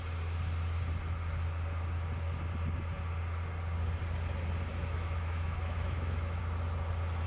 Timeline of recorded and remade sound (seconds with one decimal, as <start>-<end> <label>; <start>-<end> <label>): 0.0-4.7 recorded; 4.7-6.4 remade; 6.4-7.3 recorded